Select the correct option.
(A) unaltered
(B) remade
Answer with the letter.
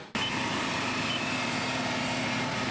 B